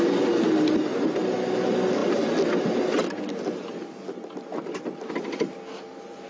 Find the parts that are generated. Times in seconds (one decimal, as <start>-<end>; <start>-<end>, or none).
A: none